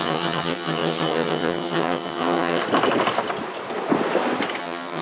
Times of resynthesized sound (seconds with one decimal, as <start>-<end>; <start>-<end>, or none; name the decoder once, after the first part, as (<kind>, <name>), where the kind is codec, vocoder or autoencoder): 0.0-2.6 (vocoder, HiFi-GAN); 4.6-5.0